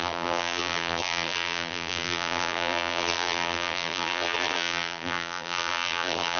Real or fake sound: fake